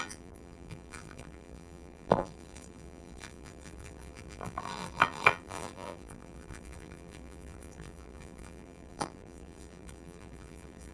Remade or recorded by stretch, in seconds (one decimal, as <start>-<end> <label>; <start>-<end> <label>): 0.0-10.9 remade